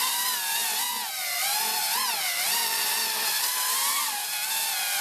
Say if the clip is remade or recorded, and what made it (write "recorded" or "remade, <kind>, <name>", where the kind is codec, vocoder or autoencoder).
recorded